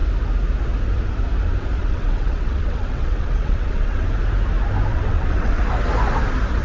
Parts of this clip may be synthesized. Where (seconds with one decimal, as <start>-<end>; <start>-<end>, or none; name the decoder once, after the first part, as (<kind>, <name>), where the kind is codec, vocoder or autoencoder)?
1.8-4.1 (vocoder, WaveNeXt); 4.9-5.6